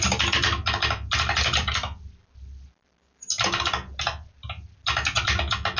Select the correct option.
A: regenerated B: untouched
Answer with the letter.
B